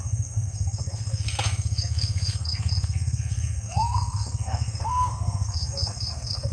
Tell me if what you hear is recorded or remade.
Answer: remade